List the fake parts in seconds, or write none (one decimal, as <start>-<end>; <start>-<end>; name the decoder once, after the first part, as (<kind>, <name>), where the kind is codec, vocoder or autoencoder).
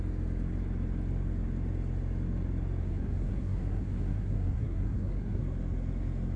2.8-5.4 (codec, SNAC)